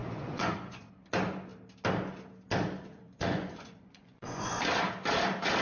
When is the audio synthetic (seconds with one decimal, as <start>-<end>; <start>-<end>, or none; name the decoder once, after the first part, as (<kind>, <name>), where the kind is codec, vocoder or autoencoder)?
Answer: 0.0-0.9 (vocoder, Vocos); 2.9-4.6